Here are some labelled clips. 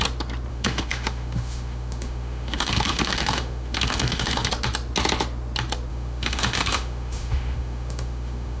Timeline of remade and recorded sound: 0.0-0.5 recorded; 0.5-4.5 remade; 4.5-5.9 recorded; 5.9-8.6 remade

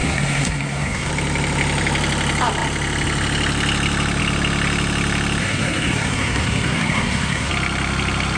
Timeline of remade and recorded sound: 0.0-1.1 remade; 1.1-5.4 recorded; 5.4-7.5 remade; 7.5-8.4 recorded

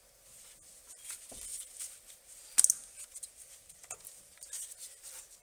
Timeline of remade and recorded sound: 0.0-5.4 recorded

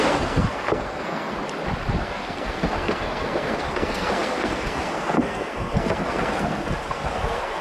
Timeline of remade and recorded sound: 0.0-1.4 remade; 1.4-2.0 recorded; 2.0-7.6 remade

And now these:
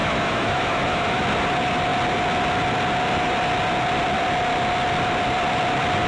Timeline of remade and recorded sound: 0.0-1.2 remade; 1.2-6.1 recorded

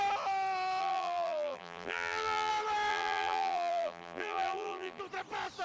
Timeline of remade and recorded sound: 0.0-0.8 recorded; 0.8-2.5 remade; 2.5-2.9 recorded; 2.9-5.0 remade; 5.0-5.6 recorded

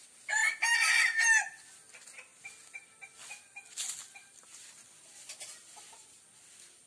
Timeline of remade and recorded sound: 0.0-6.9 recorded